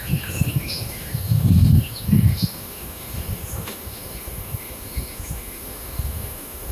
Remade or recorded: remade